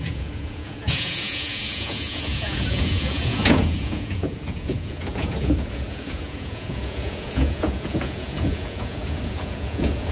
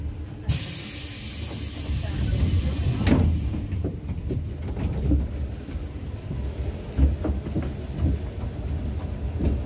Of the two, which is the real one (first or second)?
second